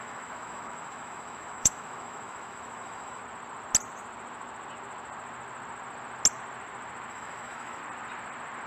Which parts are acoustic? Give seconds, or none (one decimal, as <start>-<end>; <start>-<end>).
3.2-7.1; 7.8-8.7